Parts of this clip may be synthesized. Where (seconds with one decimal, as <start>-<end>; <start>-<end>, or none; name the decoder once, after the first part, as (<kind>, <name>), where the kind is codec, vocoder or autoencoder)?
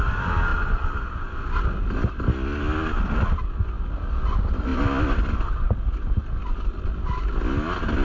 none